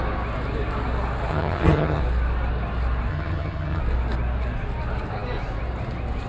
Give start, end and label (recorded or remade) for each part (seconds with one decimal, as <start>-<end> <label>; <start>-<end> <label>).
0.0-1.3 recorded; 1.3-2.0 remade; 2.0-3.1 recorded; 3.1-3.8 remade; 3.8-6.3 recorded